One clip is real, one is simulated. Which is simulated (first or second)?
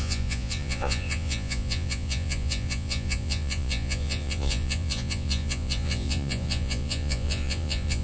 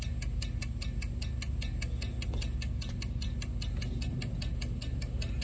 first